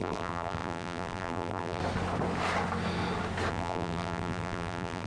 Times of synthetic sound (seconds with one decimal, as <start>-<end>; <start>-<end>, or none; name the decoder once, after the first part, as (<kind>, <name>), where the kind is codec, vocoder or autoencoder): 0.0-1.8 (vocoder, BigVGAN v2); 3.5-5.1